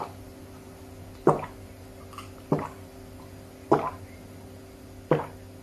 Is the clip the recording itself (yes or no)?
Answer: yes